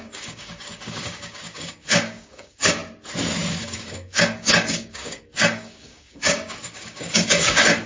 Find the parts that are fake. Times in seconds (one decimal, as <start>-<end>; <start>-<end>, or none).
0.0-2.8; 3.5-7.9